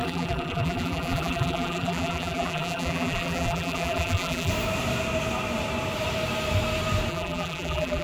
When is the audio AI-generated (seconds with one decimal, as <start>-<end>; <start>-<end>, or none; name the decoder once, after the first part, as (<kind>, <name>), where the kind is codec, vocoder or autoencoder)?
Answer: 0.0-4.5 (vocoder, BigVGAN v2); 7.1-8.0